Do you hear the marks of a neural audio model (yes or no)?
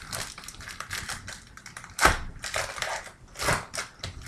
yes